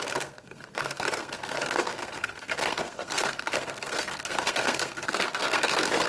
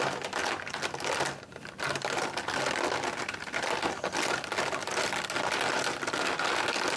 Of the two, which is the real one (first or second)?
second